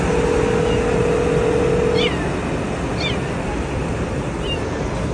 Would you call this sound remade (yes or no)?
no